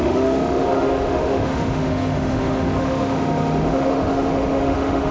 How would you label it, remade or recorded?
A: remade